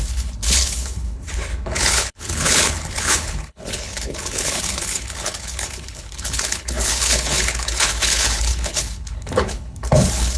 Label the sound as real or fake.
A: fake